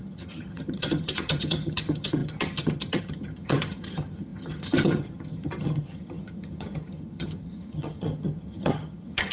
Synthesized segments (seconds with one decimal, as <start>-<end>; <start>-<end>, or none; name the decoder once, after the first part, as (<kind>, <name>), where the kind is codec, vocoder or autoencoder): 0.0-9.3 (vocoder, HiFi-GAN)